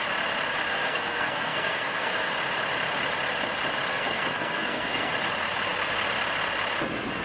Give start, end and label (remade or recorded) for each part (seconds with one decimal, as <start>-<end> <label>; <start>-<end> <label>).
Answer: 0.0-0.7 recorded; 0.7-2.3 remade; 2.3-3.9 recorded; 3.9-5.1 remade; 5.1-7.2 recorded